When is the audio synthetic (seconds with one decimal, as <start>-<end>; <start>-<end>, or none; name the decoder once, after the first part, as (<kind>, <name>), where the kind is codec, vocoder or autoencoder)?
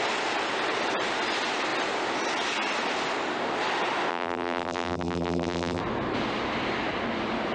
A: 4.1-5.8 (vocoder, BigVGAN v2)